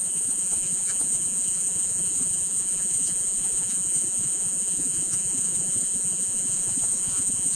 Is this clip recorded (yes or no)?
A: no